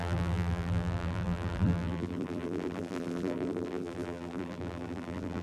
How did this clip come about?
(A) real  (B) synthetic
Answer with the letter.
B